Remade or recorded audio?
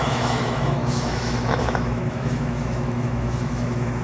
remade